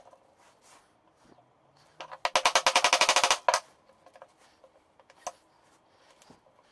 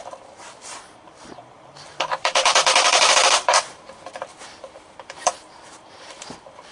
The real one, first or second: first